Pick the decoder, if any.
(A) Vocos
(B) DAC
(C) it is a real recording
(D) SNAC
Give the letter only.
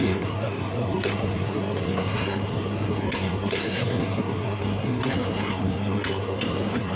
D